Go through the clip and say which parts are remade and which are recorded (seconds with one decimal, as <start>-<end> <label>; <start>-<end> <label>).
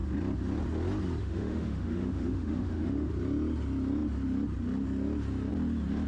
0.0-1.2 recorded; 1.2-3.1 remade; 3.1-6.1 recorded